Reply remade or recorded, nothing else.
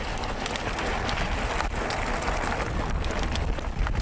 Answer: recorded